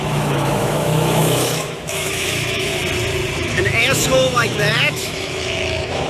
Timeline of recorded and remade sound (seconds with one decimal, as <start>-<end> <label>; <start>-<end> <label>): 0.0-2.8 remade; 2.8-3.4 recorded; 3.4-6.1 remade